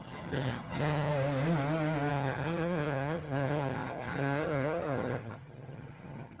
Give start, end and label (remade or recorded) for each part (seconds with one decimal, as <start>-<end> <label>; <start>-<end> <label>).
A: 0.0-1.1 remade; 1.1-2.1 recorded; 2.1-6.4 remade